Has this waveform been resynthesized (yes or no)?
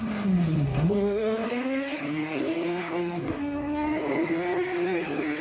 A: yes